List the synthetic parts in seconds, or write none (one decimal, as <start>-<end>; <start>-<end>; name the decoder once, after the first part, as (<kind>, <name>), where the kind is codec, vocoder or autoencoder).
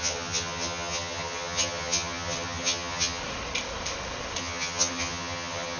0.0-3.2 (vocoder, HiFi-GAN); 4.4-5.8